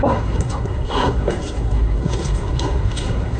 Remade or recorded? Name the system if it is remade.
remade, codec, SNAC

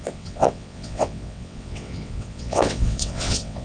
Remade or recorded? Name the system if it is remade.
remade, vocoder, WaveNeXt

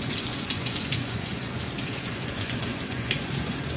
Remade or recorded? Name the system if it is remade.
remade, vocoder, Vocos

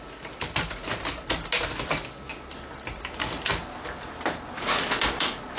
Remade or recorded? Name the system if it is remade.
recorded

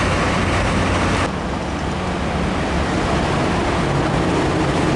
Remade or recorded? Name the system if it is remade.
recorded